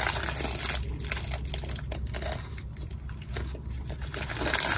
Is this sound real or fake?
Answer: real